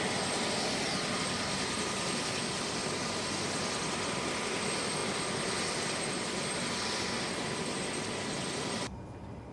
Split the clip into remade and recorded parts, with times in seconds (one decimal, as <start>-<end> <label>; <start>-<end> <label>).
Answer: 0.0-9.5 recorded